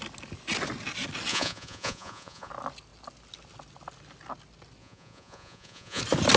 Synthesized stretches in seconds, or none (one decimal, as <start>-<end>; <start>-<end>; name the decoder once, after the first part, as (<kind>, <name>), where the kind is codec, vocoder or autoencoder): 1.3-2.5 (vocoder, Vocos); 4.8-6.0